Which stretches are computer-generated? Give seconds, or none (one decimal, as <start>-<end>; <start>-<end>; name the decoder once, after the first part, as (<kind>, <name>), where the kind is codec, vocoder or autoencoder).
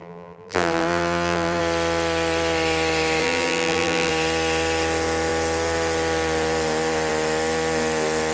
0.0-1.6 (vocoder, BigVGAN v2); 3.2-4.1